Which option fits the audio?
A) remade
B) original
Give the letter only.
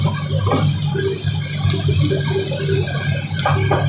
B